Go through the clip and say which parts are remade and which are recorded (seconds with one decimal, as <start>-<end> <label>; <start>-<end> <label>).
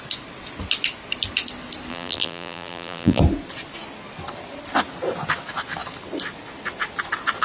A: 0.0-1.9 recorded; 1.9-3.2 remade; 3.2-7.4 recorded